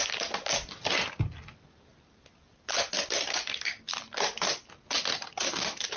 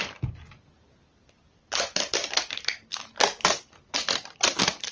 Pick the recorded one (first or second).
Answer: first